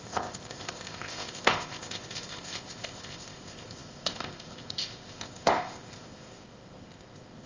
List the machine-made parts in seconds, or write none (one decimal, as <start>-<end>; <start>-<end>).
0.0-7.5